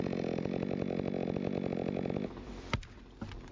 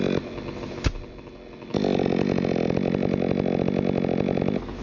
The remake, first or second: first